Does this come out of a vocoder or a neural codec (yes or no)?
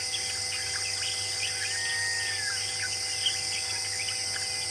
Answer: no